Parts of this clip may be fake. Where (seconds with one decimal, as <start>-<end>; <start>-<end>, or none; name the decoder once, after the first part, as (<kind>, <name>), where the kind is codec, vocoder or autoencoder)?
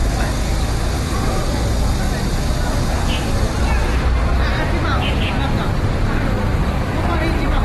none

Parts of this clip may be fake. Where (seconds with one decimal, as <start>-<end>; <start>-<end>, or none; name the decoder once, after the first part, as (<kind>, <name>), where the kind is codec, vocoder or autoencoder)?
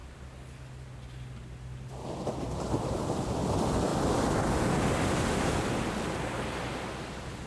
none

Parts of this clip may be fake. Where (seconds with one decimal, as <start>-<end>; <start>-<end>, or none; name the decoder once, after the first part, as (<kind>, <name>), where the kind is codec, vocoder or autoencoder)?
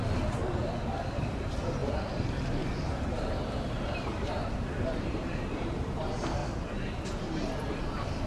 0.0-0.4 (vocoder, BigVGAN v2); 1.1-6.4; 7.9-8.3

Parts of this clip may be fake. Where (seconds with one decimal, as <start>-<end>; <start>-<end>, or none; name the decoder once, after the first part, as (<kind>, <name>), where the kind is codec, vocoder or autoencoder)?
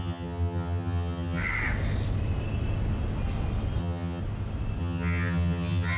0.0-1.4 (vocoder, HiFi-GAN); 3.8-4.2; 4.8-6.0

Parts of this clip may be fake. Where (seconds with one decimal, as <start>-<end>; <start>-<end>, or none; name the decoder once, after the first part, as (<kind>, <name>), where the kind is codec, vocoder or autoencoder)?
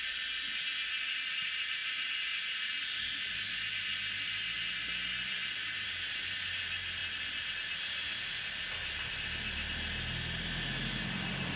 none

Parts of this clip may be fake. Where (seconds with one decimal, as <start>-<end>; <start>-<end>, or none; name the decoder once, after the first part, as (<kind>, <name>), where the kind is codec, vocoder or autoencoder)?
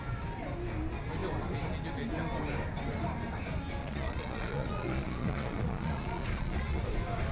3.8-6.8 (vocoder, Vocos)